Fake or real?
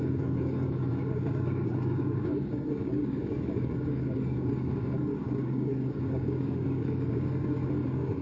fake